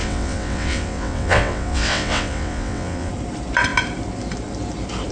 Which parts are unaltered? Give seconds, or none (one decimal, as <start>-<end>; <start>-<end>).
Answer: 3.1-5.1